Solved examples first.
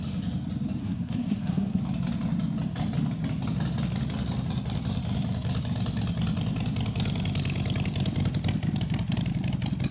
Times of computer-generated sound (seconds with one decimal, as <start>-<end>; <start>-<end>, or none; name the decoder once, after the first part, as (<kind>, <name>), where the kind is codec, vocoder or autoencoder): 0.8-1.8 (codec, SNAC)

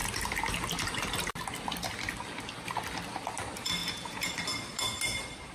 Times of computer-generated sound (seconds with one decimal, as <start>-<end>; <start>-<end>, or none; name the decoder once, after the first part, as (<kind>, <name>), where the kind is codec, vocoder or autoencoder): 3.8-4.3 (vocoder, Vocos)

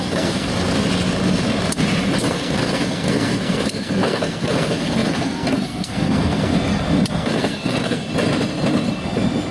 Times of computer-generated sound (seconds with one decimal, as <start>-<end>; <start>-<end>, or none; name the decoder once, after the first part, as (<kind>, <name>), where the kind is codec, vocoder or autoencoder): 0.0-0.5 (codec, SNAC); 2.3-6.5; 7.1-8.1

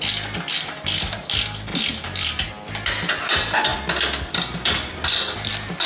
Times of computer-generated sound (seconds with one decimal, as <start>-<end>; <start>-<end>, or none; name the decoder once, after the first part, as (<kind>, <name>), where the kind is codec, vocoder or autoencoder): none

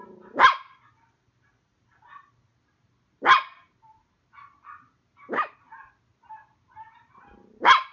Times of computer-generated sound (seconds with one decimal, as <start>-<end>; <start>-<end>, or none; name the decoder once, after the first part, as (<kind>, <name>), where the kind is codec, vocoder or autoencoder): none